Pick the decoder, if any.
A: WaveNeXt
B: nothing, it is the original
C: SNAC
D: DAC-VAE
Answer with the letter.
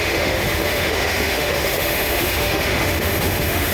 D